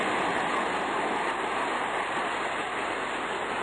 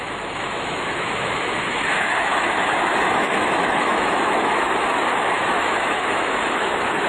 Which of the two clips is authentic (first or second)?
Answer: first